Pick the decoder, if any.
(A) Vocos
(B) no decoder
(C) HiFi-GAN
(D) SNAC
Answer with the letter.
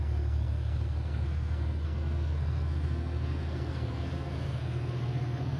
D